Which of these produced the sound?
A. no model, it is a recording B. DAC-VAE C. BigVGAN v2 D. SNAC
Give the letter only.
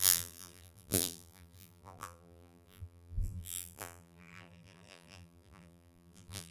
C